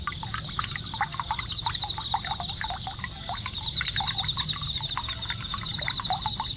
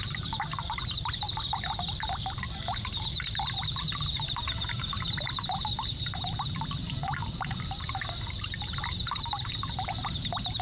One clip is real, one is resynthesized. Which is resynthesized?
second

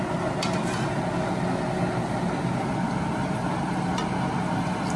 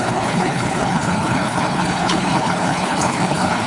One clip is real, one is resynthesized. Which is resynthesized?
second